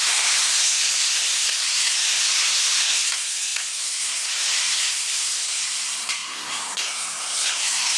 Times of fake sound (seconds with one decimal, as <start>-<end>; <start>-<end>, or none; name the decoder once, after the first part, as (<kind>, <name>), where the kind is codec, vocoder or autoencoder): 0.0-8.0 (codec, SNAC)